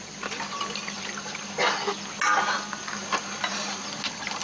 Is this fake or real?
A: real